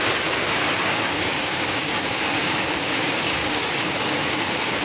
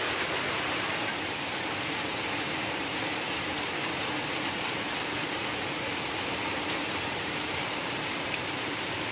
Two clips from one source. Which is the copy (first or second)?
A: first